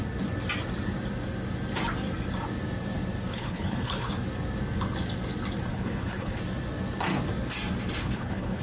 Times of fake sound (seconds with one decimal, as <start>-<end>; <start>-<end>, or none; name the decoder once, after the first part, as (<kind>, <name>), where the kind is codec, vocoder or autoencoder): 3.3-4.1 (codec, HILCodec); 5.7-6.4; 8.0-8.6